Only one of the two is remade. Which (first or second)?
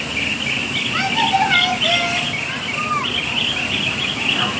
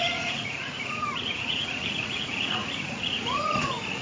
second